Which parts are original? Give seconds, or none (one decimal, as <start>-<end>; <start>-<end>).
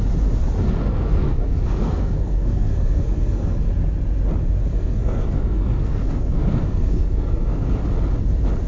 0.0-0.8; 3.7-4.7; 7.8-8.7